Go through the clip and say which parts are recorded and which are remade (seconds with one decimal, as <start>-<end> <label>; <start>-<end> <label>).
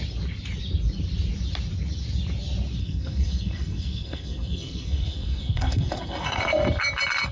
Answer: 0.0-2.8 recorded; 2.8-6.4 remade; 6.4-7.3 recorded